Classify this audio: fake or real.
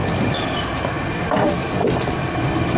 real